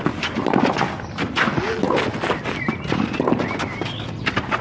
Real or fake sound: real